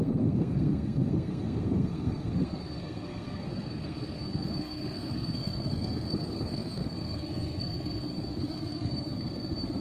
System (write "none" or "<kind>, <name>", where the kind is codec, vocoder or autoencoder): codec, SNAC